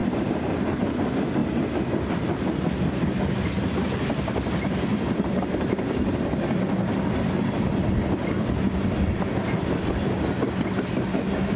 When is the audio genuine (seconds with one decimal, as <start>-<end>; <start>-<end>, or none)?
0.8-4.9; 6.4-11.6